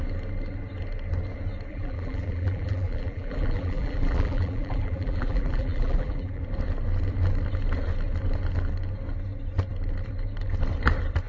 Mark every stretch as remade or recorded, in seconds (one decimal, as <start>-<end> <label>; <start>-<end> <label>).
0.0-1.7 recorded; 1.7-6.4 remade; 6.4-11.3 recorded